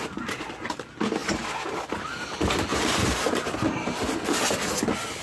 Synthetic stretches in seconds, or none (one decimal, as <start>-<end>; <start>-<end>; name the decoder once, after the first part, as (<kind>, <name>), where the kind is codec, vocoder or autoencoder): none